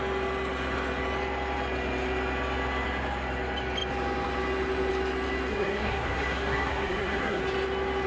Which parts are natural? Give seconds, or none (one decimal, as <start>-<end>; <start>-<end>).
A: 0.0-5.5; 7.4-8.1